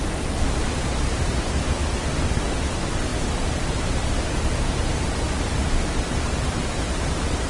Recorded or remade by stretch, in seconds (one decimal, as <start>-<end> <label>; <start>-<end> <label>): 0.0-7.5 recorded